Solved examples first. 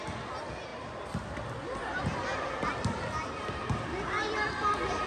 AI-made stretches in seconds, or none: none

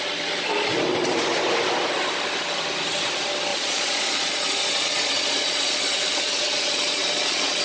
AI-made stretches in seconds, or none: 3.5-7.6 (vocoder, Vocos)

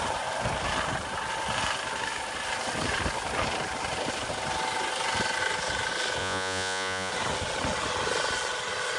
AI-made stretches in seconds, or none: 6.2-7.1 (vocoder, Vocos)